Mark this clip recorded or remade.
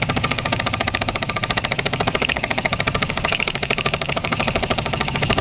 remade